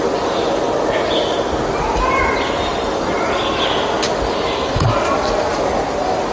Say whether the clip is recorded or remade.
recorded